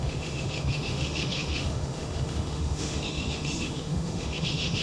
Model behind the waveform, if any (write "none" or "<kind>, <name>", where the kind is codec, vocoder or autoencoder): autoencoder, DAC-VAE